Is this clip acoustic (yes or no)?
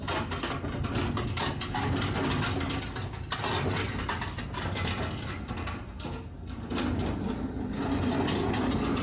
yes